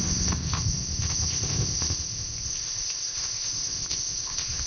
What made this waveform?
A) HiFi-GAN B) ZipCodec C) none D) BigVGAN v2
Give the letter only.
B